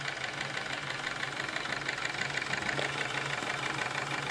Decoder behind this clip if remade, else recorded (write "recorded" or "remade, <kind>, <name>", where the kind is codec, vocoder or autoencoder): recorded